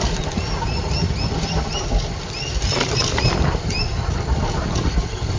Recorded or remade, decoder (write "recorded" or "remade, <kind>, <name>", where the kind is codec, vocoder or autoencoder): recorded